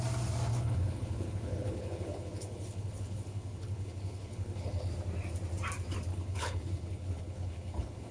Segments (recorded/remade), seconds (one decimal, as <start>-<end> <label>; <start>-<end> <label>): 0.0-0.5 recorded; 0.5-4.9 remade; 4.9-6.1 recorded; 6.1-8.1 remade